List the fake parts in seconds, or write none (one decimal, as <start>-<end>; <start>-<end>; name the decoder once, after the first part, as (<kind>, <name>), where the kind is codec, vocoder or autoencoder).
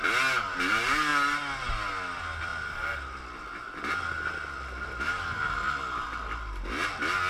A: none